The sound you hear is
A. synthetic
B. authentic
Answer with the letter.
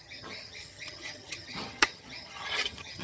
A